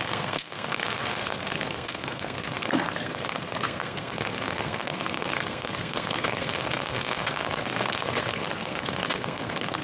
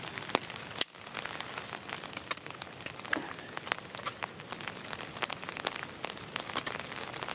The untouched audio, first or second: second